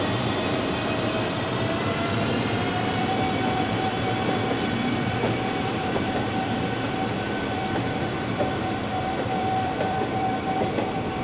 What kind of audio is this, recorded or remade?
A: remade